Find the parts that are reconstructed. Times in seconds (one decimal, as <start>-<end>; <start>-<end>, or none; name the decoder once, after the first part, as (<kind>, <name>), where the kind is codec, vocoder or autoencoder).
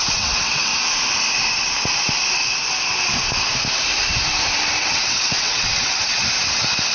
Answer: 0.0-0.7 (vocoder, WaveNeXt); 4.8-6.2